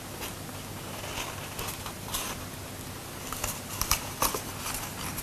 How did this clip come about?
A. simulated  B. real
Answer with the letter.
B